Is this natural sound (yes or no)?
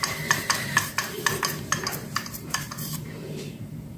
no